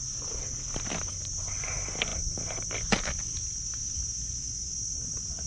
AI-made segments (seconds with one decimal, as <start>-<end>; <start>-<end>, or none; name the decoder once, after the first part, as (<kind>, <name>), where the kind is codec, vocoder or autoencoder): none